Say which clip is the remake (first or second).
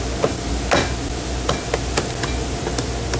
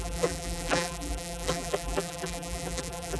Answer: second